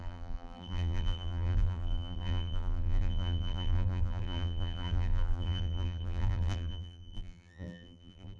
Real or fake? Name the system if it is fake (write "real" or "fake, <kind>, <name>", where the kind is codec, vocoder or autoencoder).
fake, vocoder, BigVGAN v2